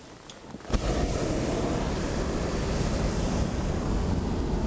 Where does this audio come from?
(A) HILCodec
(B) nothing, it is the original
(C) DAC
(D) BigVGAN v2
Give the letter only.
B